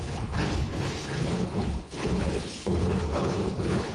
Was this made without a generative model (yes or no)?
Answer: no